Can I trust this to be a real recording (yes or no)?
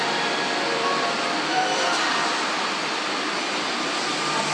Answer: no